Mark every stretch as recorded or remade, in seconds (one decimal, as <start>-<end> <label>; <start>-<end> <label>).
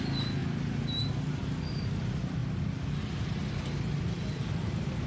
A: 0.0-5.1 recorded